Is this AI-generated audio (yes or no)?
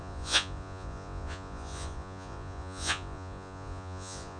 yes